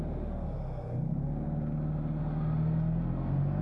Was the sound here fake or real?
real